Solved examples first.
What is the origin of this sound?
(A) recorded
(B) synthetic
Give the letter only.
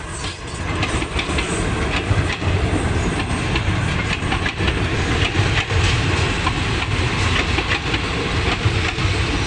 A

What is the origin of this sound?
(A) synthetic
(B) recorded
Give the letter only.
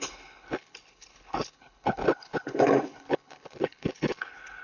A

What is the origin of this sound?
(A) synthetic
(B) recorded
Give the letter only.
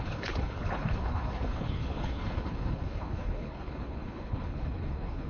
A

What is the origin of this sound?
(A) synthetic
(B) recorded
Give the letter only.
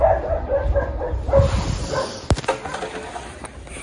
B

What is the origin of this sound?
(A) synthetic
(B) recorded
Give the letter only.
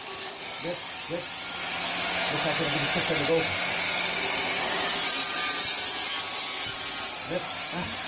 B